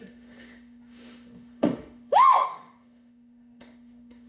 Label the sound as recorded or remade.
remade